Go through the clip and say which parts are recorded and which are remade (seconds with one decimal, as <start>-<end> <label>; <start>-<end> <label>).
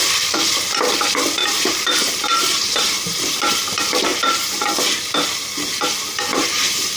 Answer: 0.0-1.4 recorded; 1.4-3.4 remade; 3.4-4.1 recorded; 4.1-4.7 remade; 4.7-6.3 recorded; 6.3-7.0 remade